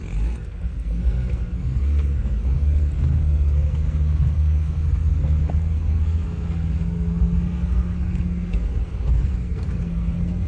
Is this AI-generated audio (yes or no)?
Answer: yes